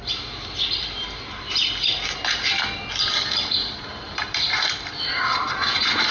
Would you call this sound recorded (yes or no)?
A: yes